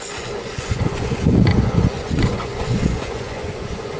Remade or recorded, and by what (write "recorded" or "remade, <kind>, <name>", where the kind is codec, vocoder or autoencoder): remade, vocoder, Vocos